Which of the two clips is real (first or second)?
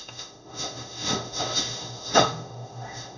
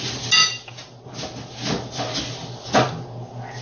second